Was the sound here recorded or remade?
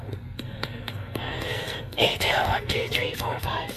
remade